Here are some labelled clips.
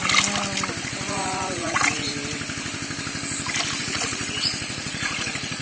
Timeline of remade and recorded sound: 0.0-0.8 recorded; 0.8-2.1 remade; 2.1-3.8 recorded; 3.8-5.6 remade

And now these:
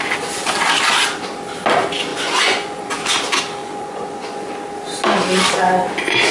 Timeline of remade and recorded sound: 0.0-2.1 recorded; 2.1-2.9 remade; 2.9-3.6 recorded; 3.6-4.5 remade; 4.5-6.3 recorded

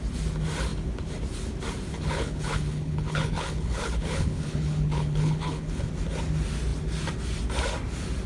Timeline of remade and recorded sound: 0.0-1.9 recorded; 1.9-5.9 remade; 5.9-8.3 recorded

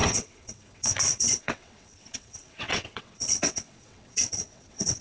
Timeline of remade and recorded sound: 0.0-5.0 remade

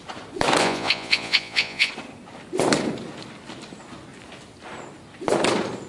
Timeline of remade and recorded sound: 0.0-0.6 recorded; 0.6-1.9 remade; 1.9-5.9 recorded